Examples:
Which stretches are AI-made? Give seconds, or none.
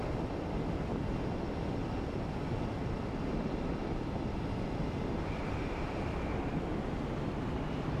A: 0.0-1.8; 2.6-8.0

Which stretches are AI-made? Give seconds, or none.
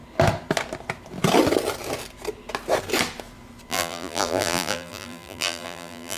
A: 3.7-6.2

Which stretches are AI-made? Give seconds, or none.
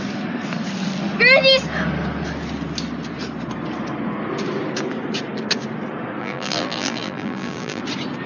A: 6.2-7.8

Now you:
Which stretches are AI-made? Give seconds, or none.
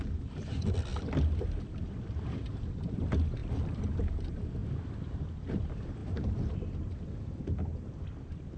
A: 0.9-2.9; 3.4-4.0; 6.0-7.4